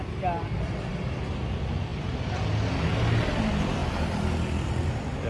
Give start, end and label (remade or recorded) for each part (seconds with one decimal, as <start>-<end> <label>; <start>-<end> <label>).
0.0-5.3 recorded